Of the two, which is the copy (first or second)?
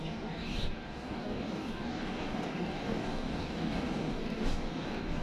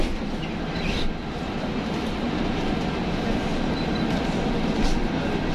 first